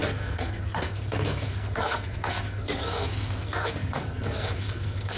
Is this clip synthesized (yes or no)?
yes